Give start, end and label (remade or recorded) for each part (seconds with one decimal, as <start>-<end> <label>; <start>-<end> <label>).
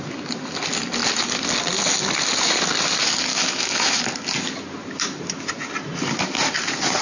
0.0-3.3 recorded; 3.3-4.0 remade; 4.0-7.0 recorded